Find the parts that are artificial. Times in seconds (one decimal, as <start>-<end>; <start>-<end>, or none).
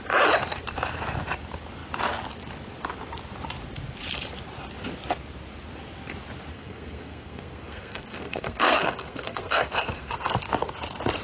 6.5-10.4